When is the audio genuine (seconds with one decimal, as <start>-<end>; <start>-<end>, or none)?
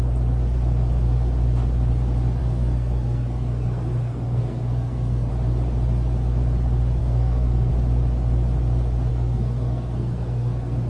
0.0-2.4; 5.3-7.0; 7.7-9.1